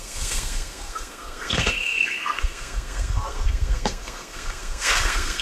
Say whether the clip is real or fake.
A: fake